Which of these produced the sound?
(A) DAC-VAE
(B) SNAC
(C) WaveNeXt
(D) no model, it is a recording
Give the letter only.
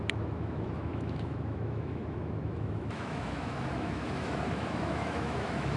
A